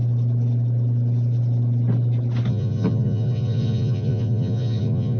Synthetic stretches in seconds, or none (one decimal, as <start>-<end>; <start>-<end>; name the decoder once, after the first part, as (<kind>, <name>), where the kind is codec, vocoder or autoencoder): 2.5-5.2 (vocoder, Vocos)